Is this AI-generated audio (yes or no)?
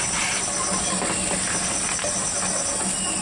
no